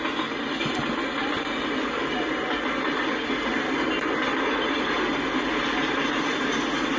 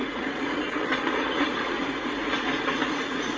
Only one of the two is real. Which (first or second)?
first